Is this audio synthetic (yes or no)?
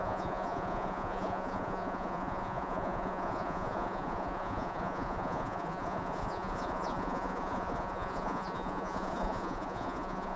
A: yes